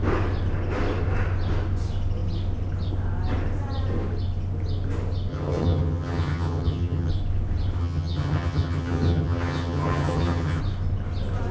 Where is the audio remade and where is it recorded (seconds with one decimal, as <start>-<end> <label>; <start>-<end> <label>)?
0.0-5.3 recorded; 5.3-7.1 remade; 7.1-7.8 recorded; 7.8-10.6 remade; 10.6-11.5 recorded